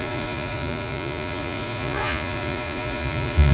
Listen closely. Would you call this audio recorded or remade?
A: remade